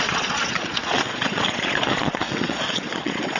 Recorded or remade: remade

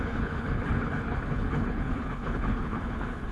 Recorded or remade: remade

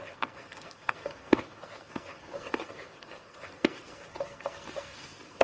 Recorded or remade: remade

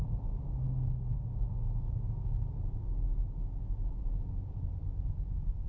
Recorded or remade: recorded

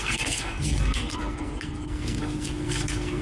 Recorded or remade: remade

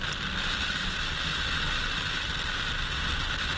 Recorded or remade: recorded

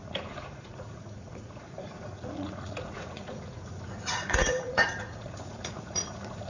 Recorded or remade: remade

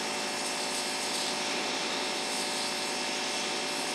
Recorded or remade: recorded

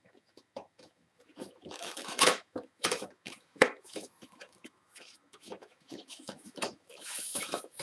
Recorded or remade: remade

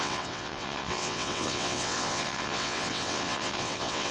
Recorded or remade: remade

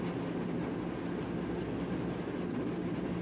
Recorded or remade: recorded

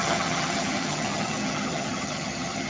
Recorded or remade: remade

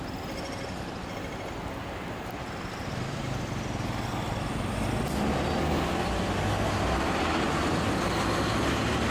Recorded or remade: recorded